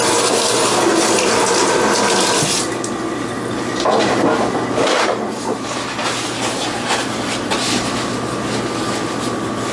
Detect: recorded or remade recorded